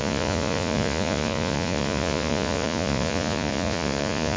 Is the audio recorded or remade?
remade